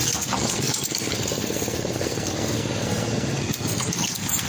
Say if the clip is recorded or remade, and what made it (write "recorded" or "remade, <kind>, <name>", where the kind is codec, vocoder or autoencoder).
remade, codec, SNAC